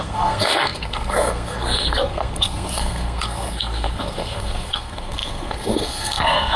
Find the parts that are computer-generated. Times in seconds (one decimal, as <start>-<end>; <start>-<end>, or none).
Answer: 0.0-6.6